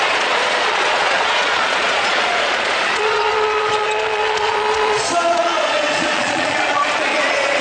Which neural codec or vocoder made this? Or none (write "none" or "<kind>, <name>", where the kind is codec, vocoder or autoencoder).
vocoder, Vocos